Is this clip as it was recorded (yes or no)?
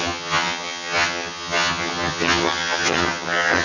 no